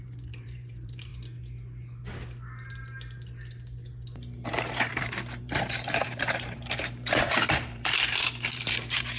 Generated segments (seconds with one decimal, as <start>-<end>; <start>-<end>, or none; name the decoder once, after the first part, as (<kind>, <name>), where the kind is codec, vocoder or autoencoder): 0.0-1.1 (vocoder, BigVGAN v2); 4.5-4.9; 5.4-9.2